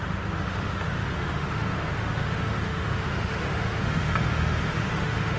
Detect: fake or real fake